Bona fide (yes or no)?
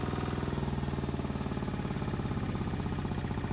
yes